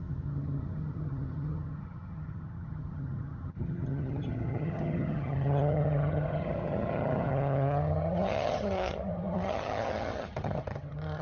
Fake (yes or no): yes